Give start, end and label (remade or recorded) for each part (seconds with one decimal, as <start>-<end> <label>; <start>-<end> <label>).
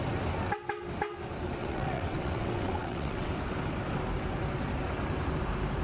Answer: 0.0-1.6 recorded; 1.6-3.3 remade; 3.3-5.8 recorded